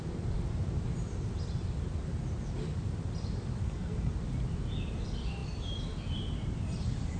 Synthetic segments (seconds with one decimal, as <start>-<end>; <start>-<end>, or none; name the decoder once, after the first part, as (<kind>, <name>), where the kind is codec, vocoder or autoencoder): 3.6-4.1 (codec, SNAC)